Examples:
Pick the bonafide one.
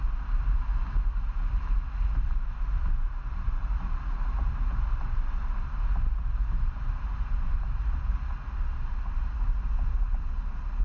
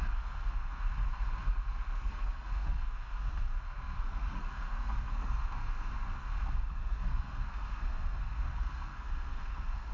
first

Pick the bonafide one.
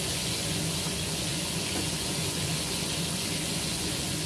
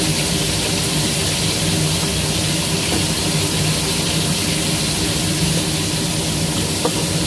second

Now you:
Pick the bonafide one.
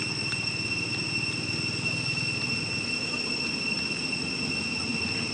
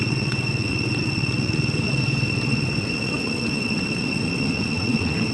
first